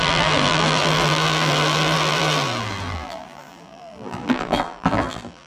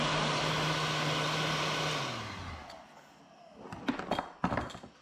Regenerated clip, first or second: first